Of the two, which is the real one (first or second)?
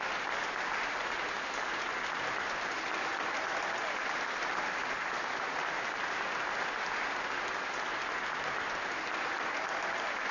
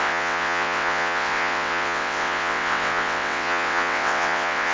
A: first